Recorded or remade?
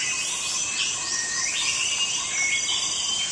recorded